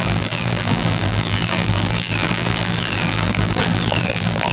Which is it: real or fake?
fake